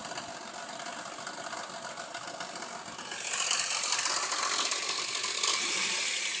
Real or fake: real